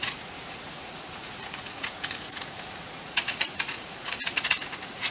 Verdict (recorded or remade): remade